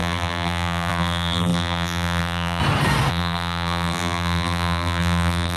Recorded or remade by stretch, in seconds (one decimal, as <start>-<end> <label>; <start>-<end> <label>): 0.0-2.6 remade; 2.6-3.1 recorded; 3.1-5.6 remade